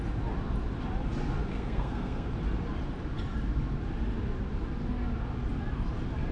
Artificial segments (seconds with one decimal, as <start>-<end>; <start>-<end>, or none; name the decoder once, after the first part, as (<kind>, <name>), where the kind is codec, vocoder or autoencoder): 1.5-2.3 (codec, SNAC)